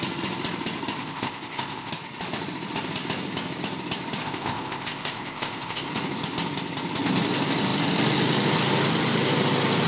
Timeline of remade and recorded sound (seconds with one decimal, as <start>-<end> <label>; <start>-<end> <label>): 0.0-1.0 recorded; 1.0-1.9 remade; 1.9-4.2 recorded; 4.2-5.9 remade; 5.9-9.9 recorded